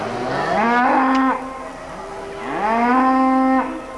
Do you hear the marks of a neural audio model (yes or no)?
no